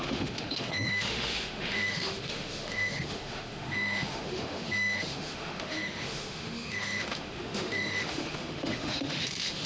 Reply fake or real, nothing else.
fake